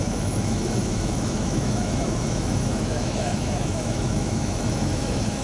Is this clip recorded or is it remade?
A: remade